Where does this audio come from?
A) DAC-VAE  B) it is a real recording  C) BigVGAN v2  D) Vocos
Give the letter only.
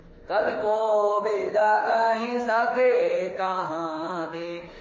A